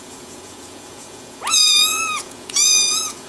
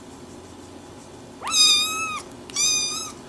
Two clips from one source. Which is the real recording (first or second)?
second